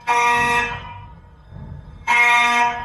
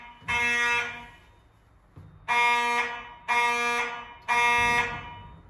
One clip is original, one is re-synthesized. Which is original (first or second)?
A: second